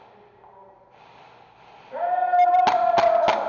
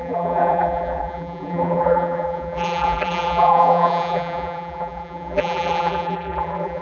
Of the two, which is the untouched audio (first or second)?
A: first